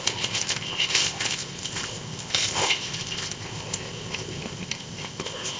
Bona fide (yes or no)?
no